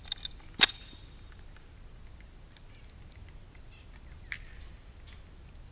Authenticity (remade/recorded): recorded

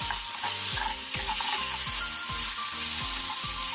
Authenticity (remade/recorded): recorded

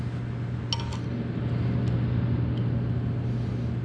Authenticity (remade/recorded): recorded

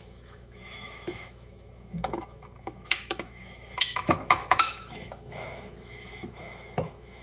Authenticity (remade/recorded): remade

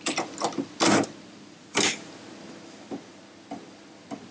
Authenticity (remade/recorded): recorded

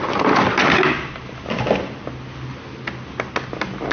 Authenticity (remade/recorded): recorded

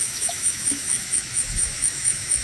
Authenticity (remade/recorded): remade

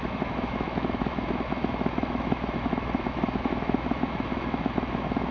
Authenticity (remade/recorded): remade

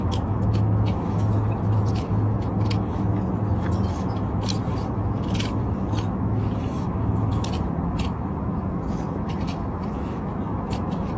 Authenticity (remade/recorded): remade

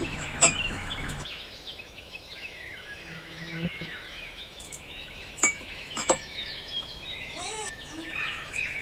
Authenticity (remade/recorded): remade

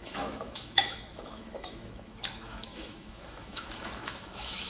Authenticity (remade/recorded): remade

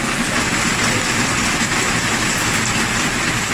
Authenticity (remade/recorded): recorded